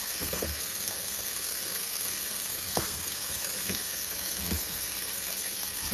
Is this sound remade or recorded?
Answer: remade